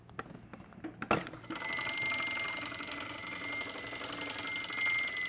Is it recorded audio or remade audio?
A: recorded